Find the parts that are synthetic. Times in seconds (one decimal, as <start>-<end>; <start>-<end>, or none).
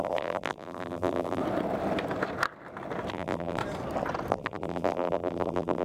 0.0-1.4; 3.1-3.6; 4.3-5.8